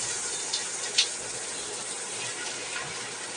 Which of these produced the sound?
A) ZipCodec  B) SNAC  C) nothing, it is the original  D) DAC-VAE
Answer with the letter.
C